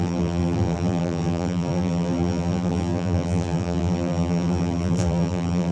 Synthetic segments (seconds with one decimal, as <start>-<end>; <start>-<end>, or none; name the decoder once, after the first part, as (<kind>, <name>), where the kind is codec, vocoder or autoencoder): 0.0-5.7 (vocoder, BigVGAN v2)